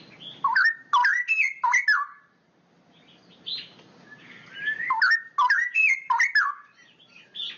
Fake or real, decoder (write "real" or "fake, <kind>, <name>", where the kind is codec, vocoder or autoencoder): real